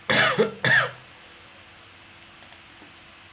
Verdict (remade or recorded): recorded